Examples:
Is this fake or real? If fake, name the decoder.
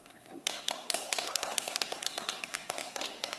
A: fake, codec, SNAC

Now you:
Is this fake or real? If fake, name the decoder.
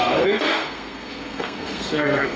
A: fake, codec, SNAC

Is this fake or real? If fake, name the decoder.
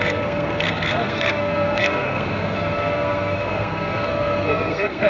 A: fake, codec, SNAC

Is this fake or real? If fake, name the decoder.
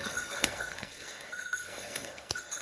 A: fake, codec, SNAC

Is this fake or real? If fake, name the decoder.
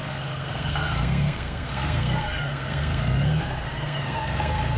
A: fake, codec, SNAC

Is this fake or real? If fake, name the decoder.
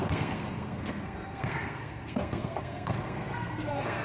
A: fake, codec, SNAC